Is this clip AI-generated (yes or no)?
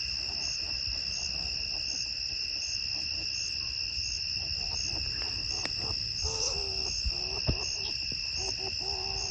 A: no